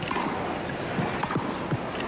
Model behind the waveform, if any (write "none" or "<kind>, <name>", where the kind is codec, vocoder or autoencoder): none